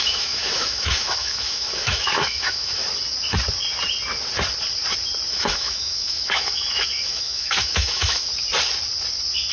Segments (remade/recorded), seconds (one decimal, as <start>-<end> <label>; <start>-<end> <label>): 0.0-2.8 remade; 2.8-5.3 recorded; 5.3-8.3 remade; 8.3-9.5 recorded